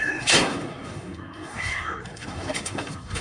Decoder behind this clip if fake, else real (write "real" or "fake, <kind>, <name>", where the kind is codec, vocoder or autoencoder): fake, codec, SNAC